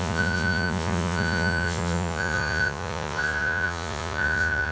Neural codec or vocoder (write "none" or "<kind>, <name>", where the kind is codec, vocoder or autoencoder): vocoder, Vocos